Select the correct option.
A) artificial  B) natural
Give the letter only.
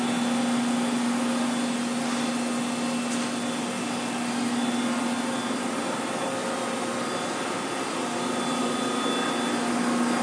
B